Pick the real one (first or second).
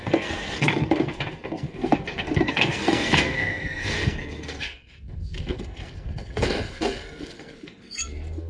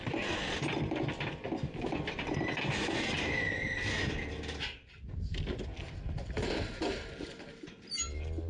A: second